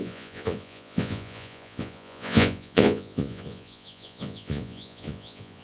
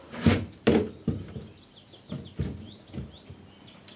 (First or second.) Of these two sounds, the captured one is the second